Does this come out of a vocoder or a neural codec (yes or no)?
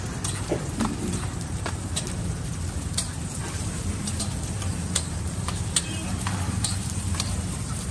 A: yes